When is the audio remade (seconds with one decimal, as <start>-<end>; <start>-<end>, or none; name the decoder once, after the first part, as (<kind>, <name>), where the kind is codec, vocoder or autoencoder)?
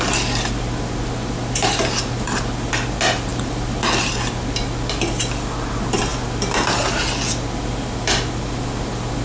none